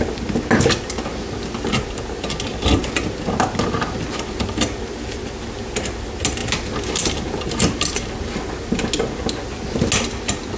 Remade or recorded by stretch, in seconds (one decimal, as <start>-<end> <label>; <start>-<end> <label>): 0.0-10.6 recorded